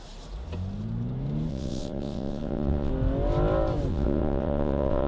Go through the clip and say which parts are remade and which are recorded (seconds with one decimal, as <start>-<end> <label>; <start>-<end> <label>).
0.0-1.5 recorded; 1.5-2.9 remade; 2.9-3.9 recorded; 3.9-5.1 remade